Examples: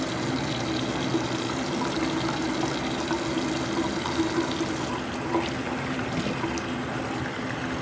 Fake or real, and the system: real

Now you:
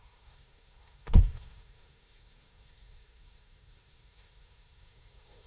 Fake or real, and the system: fake, codec, SNAC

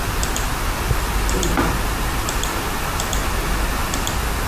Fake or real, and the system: real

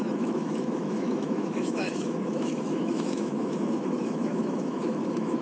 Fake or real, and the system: fake, autoencoder, DAC-VAE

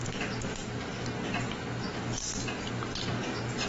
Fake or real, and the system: real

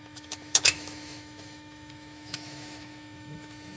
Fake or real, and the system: fake, autoencoder, DAC-VAE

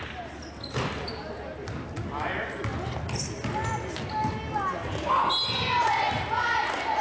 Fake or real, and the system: real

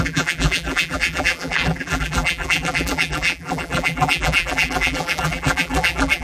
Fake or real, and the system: fake, vocoder, BigVGAN v2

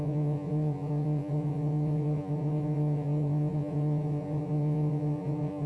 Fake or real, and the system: fake, vocoder, Vocos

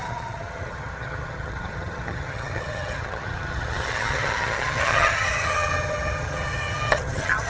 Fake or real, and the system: fake, vocoder, HiFi-GAN